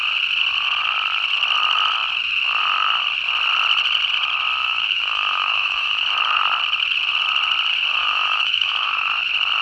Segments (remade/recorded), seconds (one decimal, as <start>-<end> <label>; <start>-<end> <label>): 0.0-4.6 recorded; 4.6-6.1 remade; 6.1-8.0 recorded; 8.0-9.1 remade; 9.1-9.6 recorded